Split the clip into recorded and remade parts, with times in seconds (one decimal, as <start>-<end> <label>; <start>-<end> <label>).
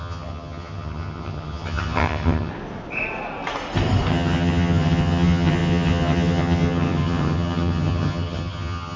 0.0-2.5 remade; 2.5-4.1 recorded; 4.1-9.0 remade